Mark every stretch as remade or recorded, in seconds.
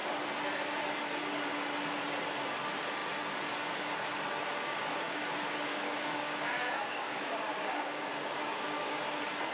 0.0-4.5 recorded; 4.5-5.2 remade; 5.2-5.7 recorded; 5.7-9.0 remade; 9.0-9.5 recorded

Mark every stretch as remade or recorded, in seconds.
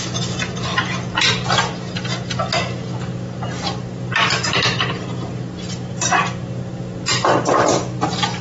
0.0-8.4 recorded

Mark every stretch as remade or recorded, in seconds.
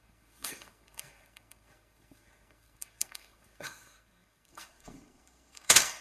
0.0-6.0 remade